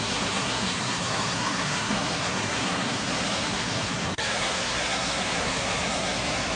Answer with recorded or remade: remade